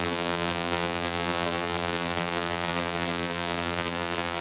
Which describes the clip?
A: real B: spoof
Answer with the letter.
B